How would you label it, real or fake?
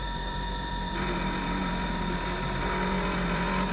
fake